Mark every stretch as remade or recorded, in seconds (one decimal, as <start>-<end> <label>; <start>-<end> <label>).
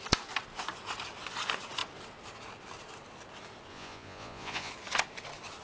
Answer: 0.0-3.7 recorded; 3.7-4.7 remade; 4.7-5.6 recorded